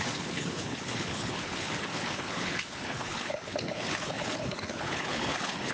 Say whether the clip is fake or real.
fake